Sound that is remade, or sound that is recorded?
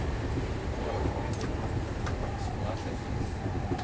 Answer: recorded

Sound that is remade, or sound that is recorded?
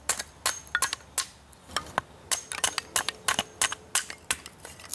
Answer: recorded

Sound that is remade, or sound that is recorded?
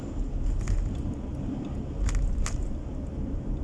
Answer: recorded